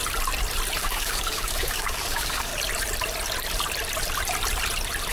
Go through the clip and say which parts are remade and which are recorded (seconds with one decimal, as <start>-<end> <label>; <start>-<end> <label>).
0.0-0.8 recorded; 0.8-2.5 remade; 2.5-5.1 recorded

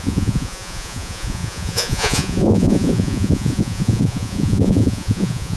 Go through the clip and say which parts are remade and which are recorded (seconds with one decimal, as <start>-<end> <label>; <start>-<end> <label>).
0.0-5.6 remade